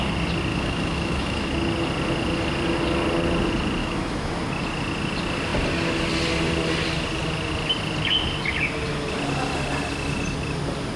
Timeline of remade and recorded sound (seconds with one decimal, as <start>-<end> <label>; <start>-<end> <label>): 0.0-0.5 recorded; 0.5-1.5 remade; 1.5-3.8 recorded; 3.8-4.3 remade; 4.3-11.0 recorded